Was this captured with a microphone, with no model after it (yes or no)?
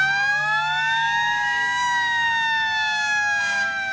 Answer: no